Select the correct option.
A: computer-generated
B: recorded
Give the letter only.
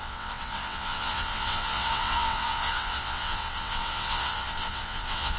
A